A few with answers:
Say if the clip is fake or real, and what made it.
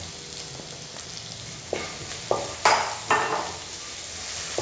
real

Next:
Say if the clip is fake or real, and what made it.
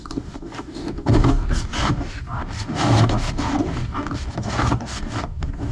fake, codec, DAC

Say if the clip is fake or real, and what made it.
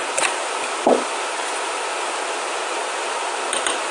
real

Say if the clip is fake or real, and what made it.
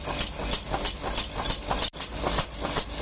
real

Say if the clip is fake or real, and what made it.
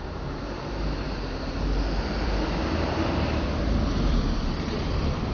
fake, vocoder, BigVGAN v2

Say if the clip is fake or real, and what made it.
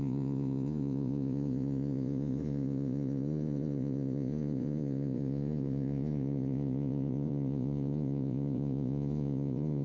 fake, vocoder, Vocos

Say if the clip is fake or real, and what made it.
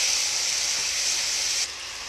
real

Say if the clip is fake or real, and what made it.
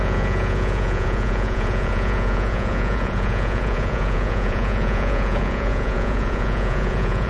fake, vocoder, Vocos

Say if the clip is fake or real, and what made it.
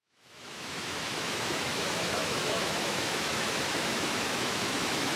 fake, autoencoder, DAC-VAE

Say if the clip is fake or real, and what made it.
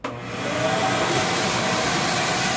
real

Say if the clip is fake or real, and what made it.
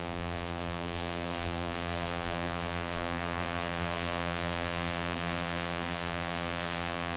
fake, vocoder, BigVGAN v2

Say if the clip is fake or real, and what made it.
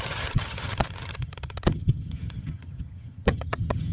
fake, vocoder, HiFi-GAN